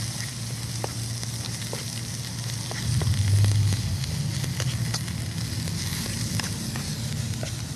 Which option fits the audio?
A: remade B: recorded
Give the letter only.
B